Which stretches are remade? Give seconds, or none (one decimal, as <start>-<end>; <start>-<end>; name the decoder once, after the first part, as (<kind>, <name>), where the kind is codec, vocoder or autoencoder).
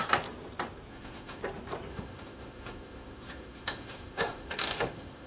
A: 0.9-1.4 (autoencoder, DAC-VAE); 1.9-5.3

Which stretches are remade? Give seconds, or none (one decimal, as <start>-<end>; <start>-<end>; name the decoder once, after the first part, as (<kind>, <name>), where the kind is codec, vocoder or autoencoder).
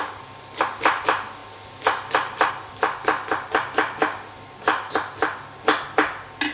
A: none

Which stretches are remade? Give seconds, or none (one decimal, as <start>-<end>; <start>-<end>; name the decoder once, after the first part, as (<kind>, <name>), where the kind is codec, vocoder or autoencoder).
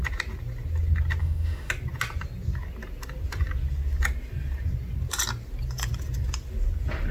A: 1.2-1.7 (autoencoder, DAC-VAE)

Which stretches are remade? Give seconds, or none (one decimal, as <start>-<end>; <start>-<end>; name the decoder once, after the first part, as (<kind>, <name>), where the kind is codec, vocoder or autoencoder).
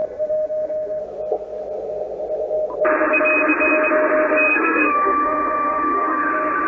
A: 0.0-1.0 (autoencoder, DAC-VAE); 4.5-6.3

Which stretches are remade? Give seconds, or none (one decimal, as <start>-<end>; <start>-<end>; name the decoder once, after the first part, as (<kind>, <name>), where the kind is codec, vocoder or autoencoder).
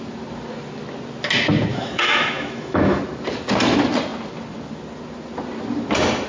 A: 1.7-3.0 (autoencoder, DAC-VAE)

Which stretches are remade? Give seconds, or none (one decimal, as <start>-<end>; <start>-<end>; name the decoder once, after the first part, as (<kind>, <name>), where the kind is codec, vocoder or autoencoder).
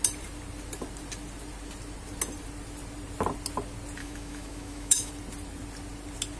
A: 4.0-5.1 (autoencoder, DAC-VAE)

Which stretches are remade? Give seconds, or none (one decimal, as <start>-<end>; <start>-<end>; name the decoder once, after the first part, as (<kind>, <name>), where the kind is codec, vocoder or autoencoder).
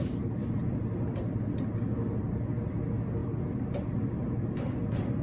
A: none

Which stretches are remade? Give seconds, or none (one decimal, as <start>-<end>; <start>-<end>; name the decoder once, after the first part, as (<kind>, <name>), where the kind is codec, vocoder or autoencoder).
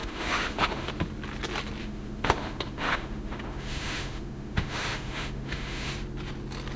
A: 0.0-0.9 (autoencoder, DAC-VAE); 1.8-5.9